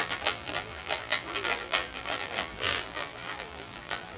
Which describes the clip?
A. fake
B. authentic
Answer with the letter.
A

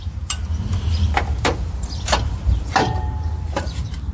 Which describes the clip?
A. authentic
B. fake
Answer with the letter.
B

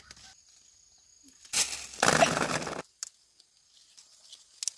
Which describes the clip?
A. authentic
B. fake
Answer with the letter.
A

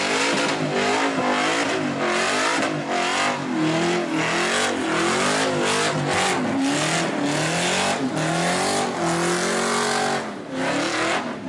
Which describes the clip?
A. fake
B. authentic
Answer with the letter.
B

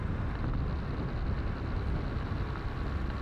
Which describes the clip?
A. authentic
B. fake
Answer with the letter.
A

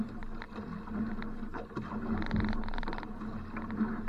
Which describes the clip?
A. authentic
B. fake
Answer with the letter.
A